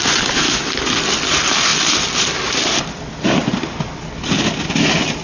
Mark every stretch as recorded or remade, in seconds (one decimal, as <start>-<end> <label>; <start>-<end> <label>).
0.0-5.2 recorded